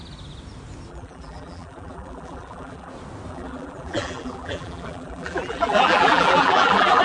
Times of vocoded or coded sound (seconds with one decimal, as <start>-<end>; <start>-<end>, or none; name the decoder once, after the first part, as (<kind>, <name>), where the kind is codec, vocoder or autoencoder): 0.9-2.9 (vocoder, BigVGAN v2); 3.3-7.0